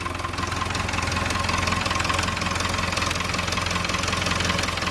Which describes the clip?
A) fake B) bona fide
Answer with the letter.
B